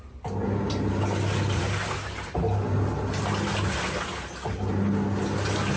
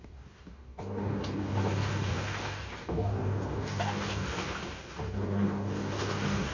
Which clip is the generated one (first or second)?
second